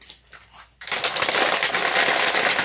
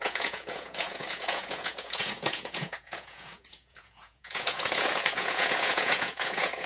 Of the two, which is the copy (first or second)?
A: second